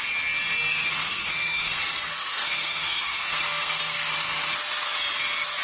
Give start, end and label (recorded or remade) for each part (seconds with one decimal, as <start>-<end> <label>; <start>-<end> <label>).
0.0-0.7 recorded; 0.7-4.1 remade; 4.1-5.6 recorded